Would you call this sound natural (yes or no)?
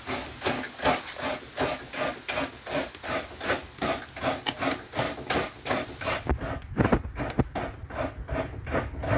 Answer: yes